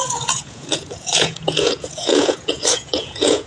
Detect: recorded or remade remade